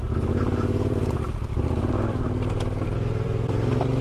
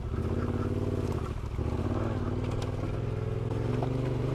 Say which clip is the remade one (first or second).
first